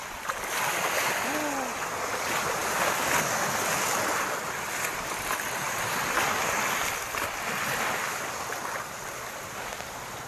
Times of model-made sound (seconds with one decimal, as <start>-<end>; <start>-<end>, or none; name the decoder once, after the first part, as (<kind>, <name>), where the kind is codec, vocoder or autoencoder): none